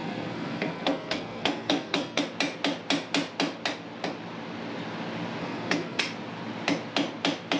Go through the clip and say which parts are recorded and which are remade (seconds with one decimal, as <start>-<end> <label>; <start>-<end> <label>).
0.0-2.2 remade; 2.2-5.4 recorded; 5.4-6.0 remade; 6.0-7.6 recorded